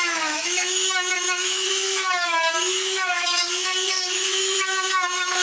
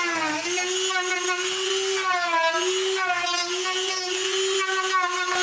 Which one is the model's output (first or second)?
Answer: first